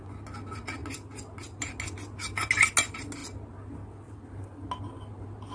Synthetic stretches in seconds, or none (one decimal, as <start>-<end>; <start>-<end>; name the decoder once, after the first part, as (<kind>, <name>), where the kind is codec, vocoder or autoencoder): none